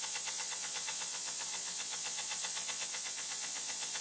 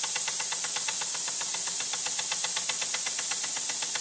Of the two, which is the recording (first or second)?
second